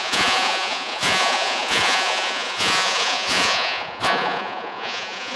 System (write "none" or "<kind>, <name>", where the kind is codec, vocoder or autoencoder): vocoder, Vocos